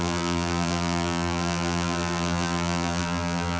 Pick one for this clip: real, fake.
fake